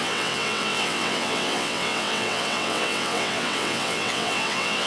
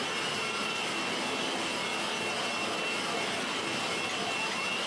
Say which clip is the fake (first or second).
first